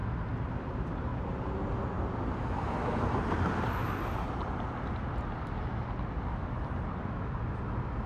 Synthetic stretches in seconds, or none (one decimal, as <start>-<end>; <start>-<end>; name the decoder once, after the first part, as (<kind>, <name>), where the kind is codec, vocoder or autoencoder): 0.5-1.1 (vocoder, BigVGAN v2); 3.0-3.8